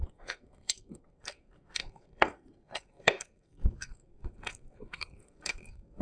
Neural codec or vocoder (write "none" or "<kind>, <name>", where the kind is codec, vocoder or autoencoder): codec, SNAC